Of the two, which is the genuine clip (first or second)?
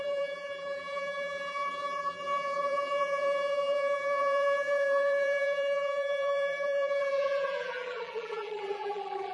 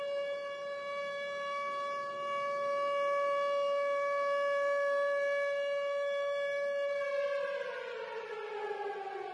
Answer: second